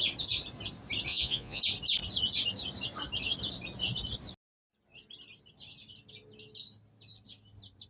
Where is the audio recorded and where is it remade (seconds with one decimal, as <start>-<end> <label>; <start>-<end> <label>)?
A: 0.0-1.1 recorded; 1.1-1.6 remade; 1.6-7.9 recorded